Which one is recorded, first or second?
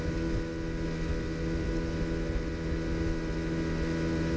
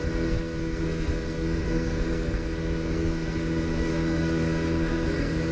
first